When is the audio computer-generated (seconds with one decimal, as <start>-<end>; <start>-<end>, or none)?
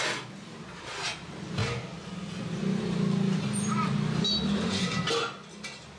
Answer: none